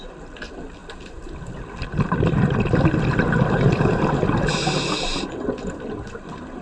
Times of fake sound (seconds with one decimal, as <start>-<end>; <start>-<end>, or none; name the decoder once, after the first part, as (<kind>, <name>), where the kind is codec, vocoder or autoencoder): none